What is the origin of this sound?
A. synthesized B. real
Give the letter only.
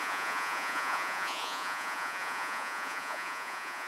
A